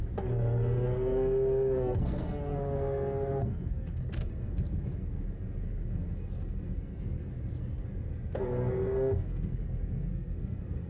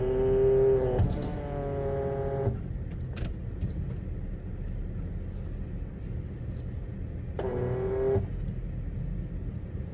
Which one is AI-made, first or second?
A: first